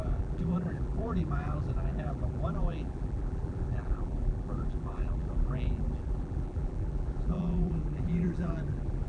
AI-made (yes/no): yes